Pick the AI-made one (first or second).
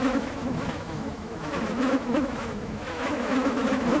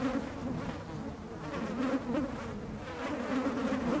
first